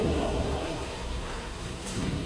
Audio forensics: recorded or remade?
remade